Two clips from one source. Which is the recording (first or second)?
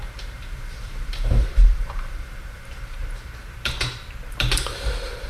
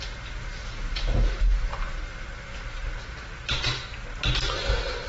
second